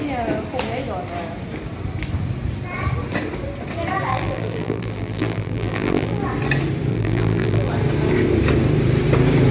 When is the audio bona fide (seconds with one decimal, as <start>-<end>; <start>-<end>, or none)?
0.0-4.1; 6.2-6.9; 7.7-9.5